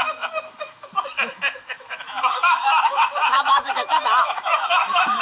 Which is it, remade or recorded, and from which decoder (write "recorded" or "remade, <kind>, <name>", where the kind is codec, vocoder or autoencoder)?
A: remade, autoencoder, DAC-VAE